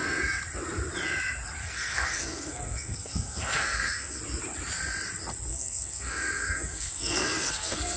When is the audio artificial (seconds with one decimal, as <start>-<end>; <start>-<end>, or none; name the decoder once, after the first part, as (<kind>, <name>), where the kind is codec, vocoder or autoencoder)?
1.6-4.2 (codec, SNAC); 5.5-8.0